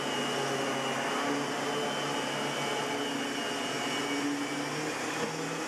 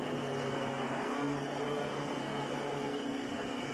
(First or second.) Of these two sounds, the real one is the first